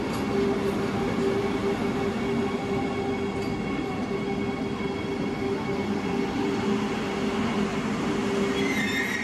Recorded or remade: recorded